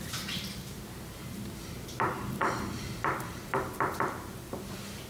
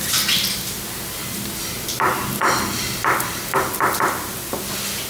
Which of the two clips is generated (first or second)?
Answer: first